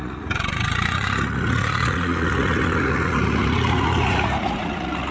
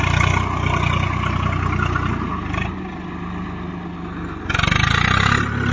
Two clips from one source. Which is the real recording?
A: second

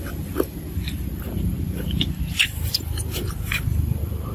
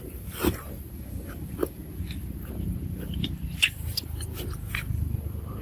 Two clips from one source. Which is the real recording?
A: second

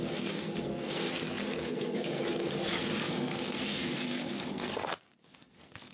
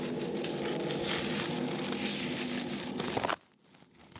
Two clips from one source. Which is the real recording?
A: second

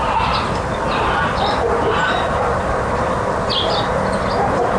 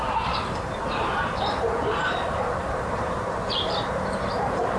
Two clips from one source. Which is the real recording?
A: first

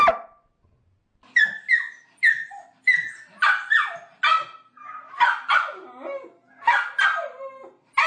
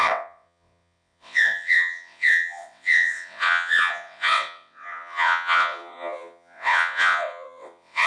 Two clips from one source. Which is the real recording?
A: first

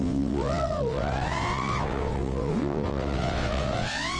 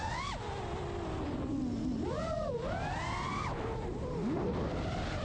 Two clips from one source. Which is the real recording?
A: second